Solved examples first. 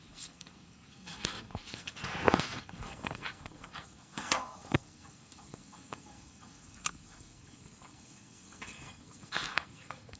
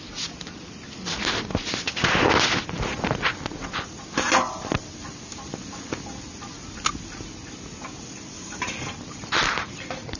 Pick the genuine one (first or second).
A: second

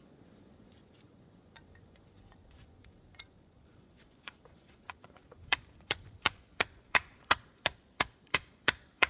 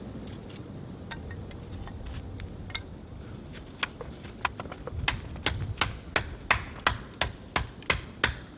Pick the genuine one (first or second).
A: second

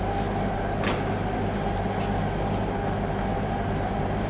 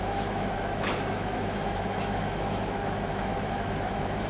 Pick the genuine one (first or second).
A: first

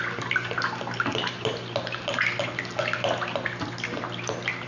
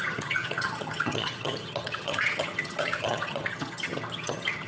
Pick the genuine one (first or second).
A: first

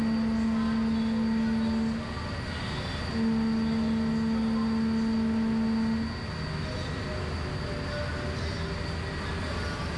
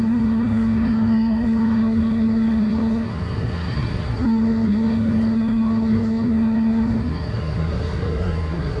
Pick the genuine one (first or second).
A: first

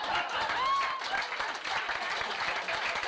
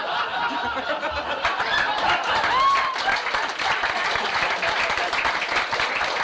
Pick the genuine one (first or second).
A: first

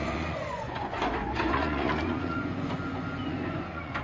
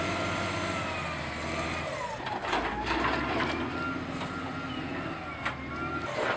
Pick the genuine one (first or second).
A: second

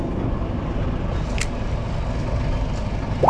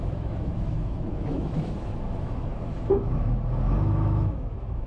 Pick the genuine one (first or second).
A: first